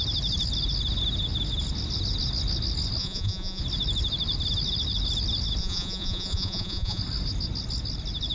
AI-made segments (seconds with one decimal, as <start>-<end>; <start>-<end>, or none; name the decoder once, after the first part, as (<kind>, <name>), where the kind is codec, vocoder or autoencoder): 3.0-3.6 (vocoder, Vocos); 5.6-7.0